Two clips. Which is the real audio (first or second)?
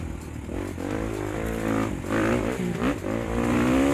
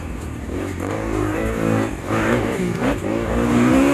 first